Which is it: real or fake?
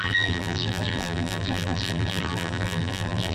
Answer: fake